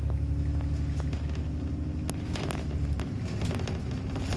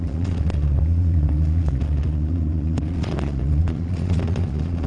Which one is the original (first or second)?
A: first